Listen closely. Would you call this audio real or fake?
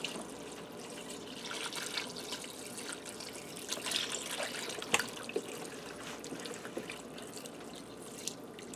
real